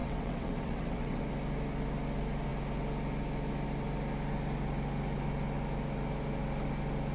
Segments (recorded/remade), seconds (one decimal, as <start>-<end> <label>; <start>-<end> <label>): 0.0-1.2 remade; 1.2-7.1 recorded